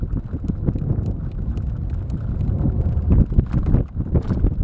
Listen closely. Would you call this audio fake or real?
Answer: real